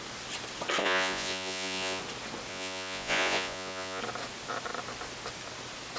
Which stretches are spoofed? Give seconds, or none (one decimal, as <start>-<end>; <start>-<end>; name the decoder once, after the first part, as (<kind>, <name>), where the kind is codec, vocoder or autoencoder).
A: 0.8-2.0 (vocoder, Vocos); 2.5-4.0